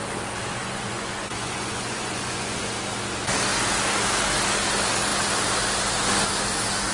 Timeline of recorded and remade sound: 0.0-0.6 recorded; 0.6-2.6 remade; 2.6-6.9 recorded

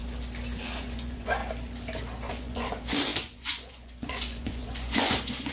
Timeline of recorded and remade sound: 0.0-0.6 recorded; 0.6-1.4 remade; 1.4-2.3 recorded; 2.3-5.5 remade

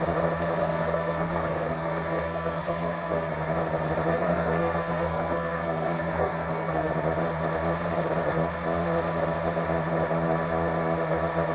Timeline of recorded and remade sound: 0.0-0.6 recorded; 0.6-3.3 remade; 3.3-4.1 recorded; 4.1-6.9 remade; 6.9-11.5 recorded

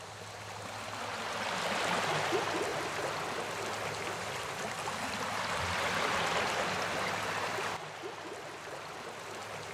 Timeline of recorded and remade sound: 0.0-9.7 recorded

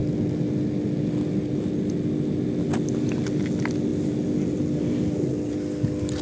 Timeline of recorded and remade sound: 0.0-6.2 recorded

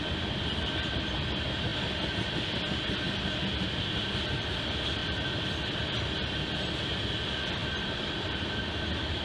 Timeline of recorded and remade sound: 0.0-5.0 recorded; 5.0-5.7 remade; 5.7-7.6 recorded; 7.6-8.6 remade; 8.6-9.2 recorded

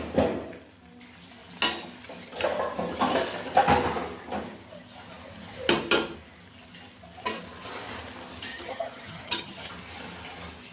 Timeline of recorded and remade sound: 0.0-8.5 recorded; 8.5-9.7 remade; 9.7-10.7 recorded